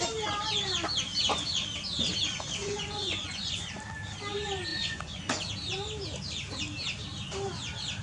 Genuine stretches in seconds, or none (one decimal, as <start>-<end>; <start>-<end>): 0.0-2.6; 3.8-4.7; 5.5-8.0